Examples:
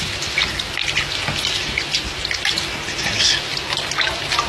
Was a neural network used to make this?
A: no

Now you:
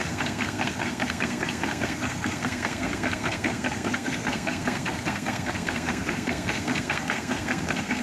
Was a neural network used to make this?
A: yes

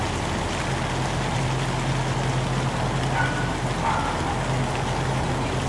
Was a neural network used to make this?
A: no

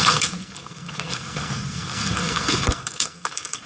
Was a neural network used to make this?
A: yes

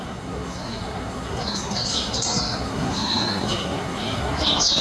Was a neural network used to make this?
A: yes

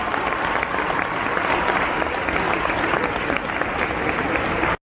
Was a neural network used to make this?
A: no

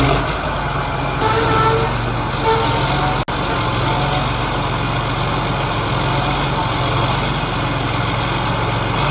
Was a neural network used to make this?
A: no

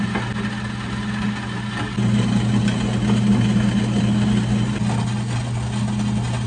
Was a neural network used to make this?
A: no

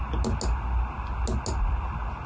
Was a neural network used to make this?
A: no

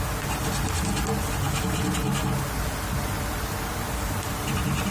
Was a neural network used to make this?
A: no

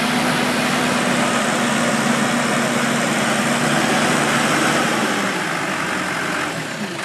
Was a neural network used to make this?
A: no